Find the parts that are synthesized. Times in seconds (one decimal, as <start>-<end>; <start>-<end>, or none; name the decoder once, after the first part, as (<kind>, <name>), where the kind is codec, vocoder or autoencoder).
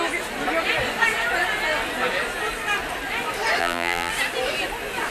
3.6-4.1 (vocoder, BigVGAN v2)